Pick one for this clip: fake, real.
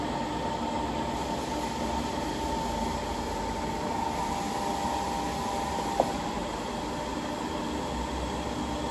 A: real